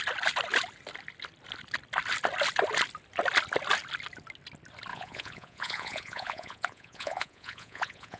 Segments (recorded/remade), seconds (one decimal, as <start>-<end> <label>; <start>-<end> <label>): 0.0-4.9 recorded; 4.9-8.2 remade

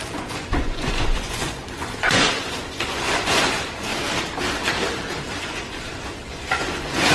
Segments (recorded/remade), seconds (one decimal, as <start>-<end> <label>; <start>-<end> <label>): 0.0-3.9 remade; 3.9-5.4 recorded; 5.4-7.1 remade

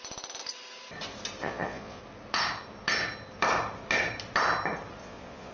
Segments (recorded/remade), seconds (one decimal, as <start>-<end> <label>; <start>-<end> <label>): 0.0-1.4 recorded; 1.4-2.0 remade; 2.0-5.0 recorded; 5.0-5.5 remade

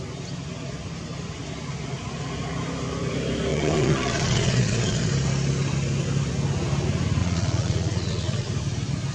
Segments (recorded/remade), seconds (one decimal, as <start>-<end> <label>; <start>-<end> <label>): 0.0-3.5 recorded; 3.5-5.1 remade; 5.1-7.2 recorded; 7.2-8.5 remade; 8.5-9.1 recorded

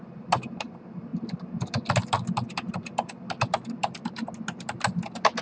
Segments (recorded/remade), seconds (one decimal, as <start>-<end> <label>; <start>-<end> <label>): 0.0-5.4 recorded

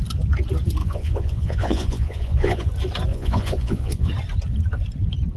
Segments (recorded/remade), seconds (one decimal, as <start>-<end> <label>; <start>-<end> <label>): 0.0-0.8 recorded; 0.8-2.7 remade; 2.7-3.1 recorded; 3.1-4.1 remade; 4.1-5.4 recorded

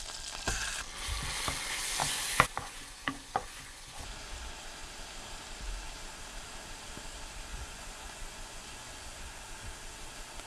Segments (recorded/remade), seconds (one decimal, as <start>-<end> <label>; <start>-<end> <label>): 0.0-2.0 recorded; 2.0-4.3 remade; 4.3-7.5 recorded; 7.5-9.4 remade; 9.4-10.5 recorded

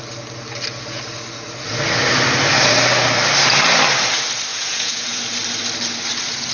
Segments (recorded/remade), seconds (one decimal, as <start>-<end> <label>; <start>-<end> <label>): 0.0-4.5 recorded; 4.5-5.2 remade; 5.2-6.5 recorded